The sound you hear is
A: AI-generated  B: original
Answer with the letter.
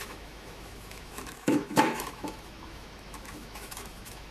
A